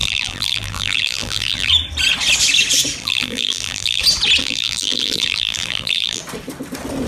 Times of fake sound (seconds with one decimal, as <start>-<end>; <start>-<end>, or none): 0.0-1.7; 3.0-4.0; 4.4-6.2